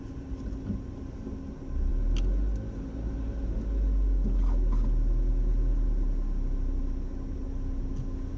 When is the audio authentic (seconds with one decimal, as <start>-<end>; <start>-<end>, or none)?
0.0-8.4